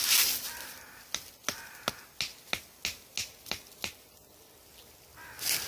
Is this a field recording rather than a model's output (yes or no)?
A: yes